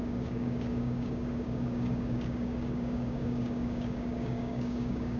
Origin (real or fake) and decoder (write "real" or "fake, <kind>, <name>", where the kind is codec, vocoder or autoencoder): fake, codec, DAC